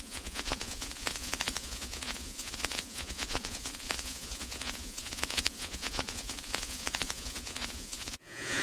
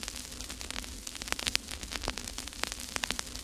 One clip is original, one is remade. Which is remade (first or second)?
first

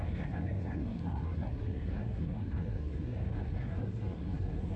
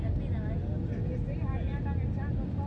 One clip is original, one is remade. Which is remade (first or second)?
first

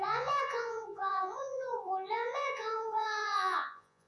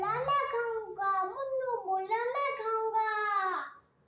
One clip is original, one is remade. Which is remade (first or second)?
first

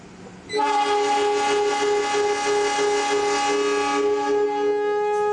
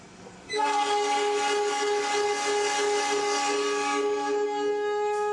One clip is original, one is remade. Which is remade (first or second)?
second